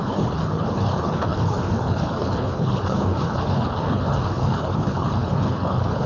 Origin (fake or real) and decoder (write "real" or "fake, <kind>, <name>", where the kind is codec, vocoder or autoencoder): fake, codec, HILCodec